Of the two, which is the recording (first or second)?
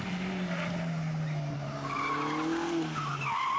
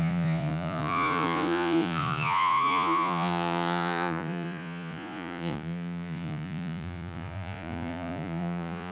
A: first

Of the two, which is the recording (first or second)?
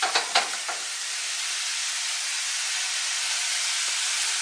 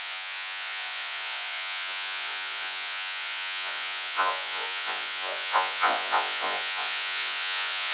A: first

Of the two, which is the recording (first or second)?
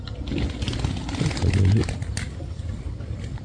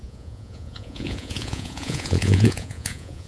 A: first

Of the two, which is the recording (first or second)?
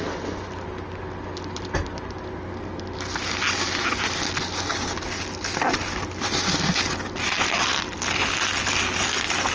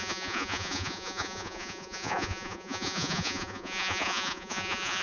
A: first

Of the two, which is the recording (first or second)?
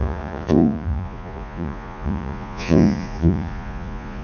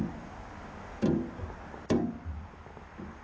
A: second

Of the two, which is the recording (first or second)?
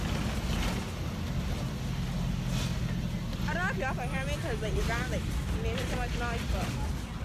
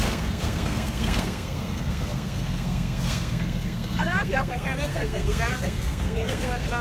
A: first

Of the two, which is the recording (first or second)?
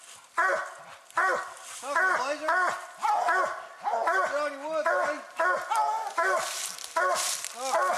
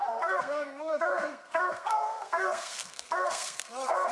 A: first